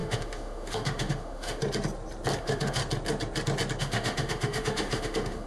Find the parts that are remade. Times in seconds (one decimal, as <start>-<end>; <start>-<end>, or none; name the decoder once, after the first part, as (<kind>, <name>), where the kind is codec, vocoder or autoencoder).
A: 0.0-1.6 (autoencoder, DAC-VAE); 2.4-2.8; 3.8-5.5